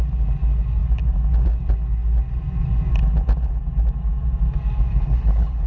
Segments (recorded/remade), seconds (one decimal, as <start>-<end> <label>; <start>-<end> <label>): 0.0-4.9 recorded; 4.9-5.7 remade